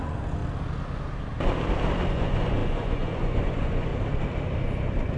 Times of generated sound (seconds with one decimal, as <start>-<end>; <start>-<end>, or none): 0.0-0.4; 2.1-3.9